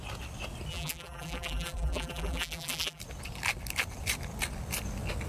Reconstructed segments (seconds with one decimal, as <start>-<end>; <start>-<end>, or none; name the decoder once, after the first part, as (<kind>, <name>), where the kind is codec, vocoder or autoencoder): 0.7-3.0 (vocoder, BigVGAN v2)